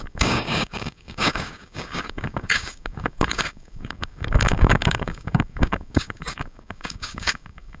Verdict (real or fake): fake